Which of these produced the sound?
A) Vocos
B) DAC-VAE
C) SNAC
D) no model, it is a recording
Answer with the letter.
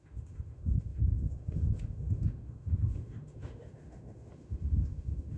B